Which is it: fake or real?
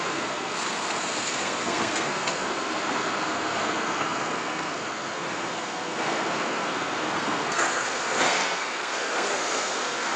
fake